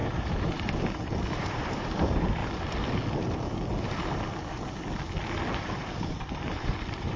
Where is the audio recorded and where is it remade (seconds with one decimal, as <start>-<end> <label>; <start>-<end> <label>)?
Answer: 0.0-2.4 remade; 2.4-6.0 recorded; 6.0-7.2 remade